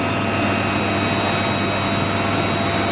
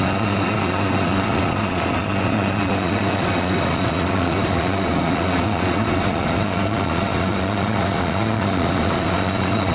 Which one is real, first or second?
first